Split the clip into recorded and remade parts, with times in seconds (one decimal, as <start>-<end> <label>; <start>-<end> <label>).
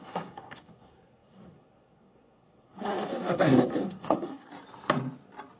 0.0-4.5 remade; 4.5-5.6 recorded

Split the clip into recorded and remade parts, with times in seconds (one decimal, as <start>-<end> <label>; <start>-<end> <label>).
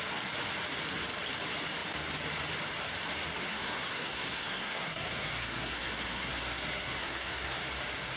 0.0-3.5 recorded; 3.5-7.6 remade; 7.6-8.2 recorded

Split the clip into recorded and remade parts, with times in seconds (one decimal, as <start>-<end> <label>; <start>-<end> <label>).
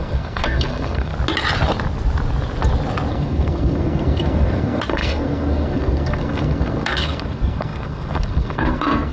0.0-1.1 remade; 1.1-3.1 recorded; 3.1-9.1 remade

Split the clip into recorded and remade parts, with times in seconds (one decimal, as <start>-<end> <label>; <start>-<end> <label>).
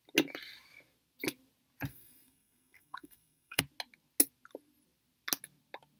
0.0-1.9 recorded; 1.9-3.6 remade; 3.6-6.0 recorded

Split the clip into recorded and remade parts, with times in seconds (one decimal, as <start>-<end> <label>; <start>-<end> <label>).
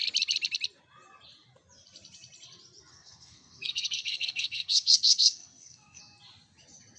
0.0-2.9 recorded; 2.9-6.0 remade; 6.0-7.0 recorded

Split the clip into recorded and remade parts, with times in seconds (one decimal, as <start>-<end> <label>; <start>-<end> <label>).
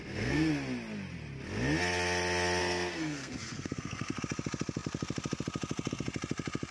0.0-0.5 remade; 0.5-2.6 recorded; 2.6-4.2 remade; 4.2-6.7 recorded